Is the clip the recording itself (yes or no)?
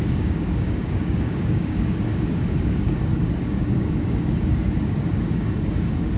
no